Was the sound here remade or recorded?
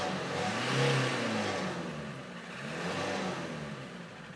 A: recorded